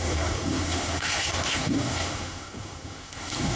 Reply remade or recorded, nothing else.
remade